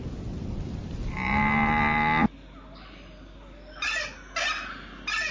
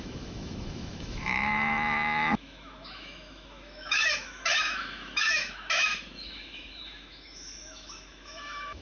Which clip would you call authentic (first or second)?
first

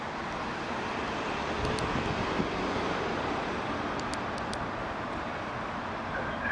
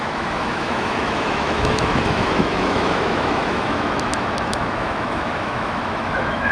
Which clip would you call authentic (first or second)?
first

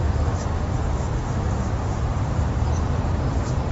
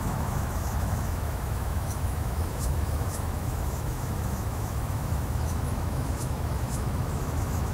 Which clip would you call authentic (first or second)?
first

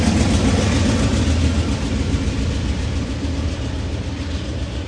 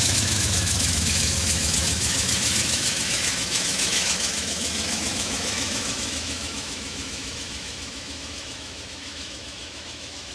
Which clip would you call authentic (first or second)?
first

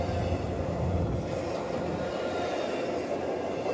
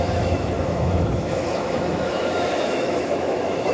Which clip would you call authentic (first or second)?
first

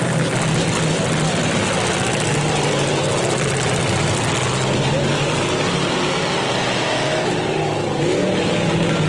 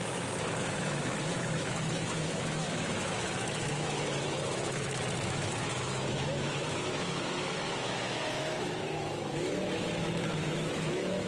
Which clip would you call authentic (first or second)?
first